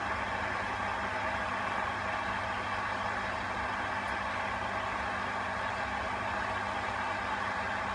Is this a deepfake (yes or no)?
no